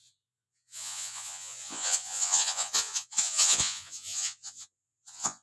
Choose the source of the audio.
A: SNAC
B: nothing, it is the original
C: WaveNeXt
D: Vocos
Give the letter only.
D